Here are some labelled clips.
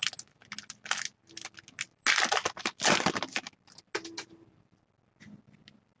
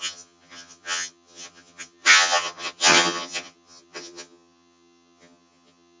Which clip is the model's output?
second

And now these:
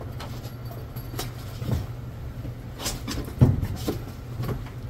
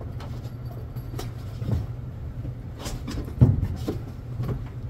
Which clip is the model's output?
second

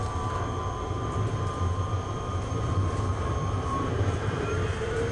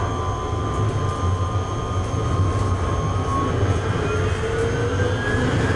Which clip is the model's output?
first